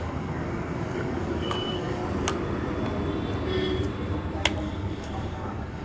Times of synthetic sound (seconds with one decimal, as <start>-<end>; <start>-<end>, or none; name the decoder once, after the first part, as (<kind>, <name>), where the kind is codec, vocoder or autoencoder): 0.0-2.0 (codec, DAC); 4.6-5.8